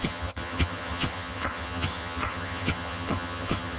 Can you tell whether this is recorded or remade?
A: remade